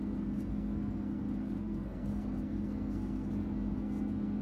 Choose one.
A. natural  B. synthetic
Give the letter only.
B